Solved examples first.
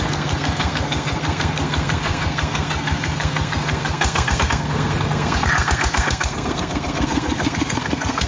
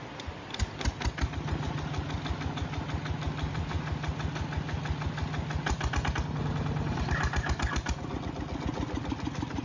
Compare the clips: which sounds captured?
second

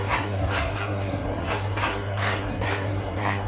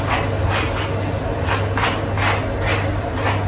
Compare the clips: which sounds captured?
second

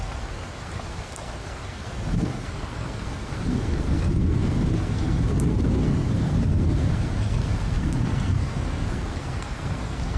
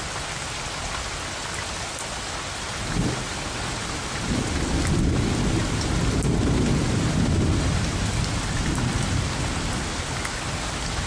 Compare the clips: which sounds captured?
second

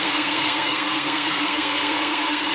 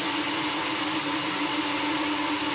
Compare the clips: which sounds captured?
second